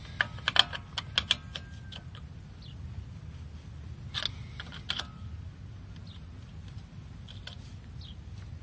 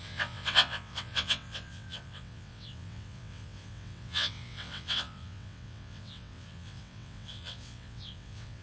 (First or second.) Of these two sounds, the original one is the first